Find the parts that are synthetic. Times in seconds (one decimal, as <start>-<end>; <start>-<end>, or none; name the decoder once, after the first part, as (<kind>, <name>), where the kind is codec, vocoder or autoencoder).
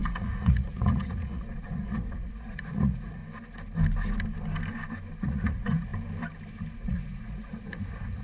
0.0-3.2 (vocoder, Vocos); 5.2-5.9; 6.7-8.2